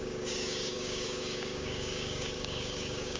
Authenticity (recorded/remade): remade